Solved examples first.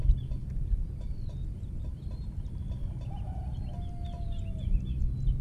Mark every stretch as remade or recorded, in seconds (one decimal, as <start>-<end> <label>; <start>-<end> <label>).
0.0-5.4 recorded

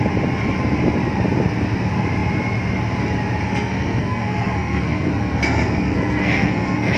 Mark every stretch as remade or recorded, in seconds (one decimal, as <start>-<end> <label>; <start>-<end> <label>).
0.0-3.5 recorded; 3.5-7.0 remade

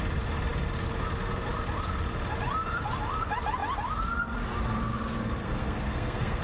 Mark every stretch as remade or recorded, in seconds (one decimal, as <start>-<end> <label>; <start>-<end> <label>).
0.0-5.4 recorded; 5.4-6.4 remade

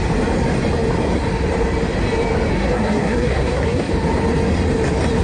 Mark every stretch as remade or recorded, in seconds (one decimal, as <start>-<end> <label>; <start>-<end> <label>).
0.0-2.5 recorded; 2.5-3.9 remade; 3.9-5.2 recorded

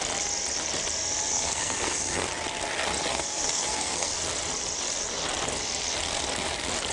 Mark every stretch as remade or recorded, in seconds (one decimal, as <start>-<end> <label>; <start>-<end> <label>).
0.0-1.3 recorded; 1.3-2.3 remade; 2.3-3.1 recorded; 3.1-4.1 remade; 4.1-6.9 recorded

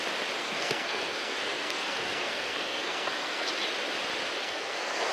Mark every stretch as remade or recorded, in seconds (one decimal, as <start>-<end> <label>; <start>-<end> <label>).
0.0-0.4 recorded; 0.4-3.5 remade; 3.5-4.4 recorded; 4.4-5.1 remade